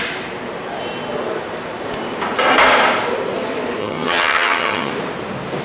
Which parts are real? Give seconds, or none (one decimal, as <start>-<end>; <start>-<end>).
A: 0.0-3.8; 4.9-5.6